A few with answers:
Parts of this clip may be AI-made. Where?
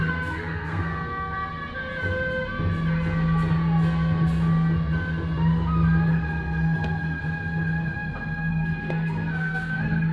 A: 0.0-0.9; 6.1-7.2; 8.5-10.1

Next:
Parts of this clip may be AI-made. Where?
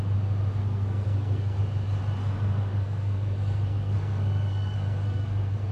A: 0.6-1.6; 2.2-5.7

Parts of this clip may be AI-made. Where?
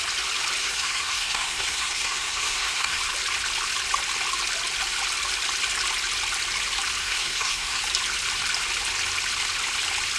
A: 0.6-3.0; 7.0-7.8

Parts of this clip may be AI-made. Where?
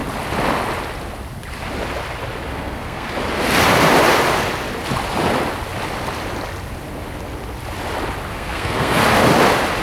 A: 2.5-3.1; 8.3-9.0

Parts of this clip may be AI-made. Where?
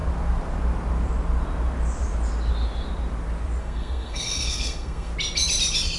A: 3.6-5.1